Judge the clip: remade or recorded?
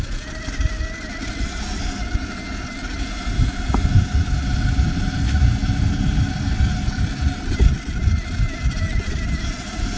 recorded